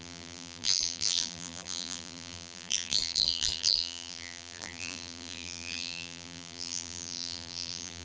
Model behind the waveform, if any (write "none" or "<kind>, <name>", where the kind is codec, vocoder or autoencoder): vocoder, BigVGAN v2